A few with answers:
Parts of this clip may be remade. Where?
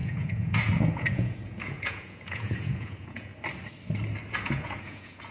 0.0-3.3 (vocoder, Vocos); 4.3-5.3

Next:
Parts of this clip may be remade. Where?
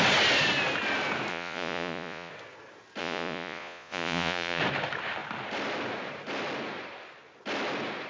1.3-2.3 (vocoder, Vocos); 3.0-4.6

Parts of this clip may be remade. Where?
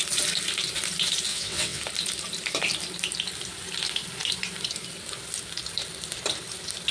1.3-1.8 (vocoder, WaveNeXt)